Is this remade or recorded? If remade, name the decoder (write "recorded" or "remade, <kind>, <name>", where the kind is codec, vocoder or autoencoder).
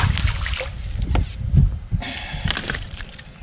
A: recorded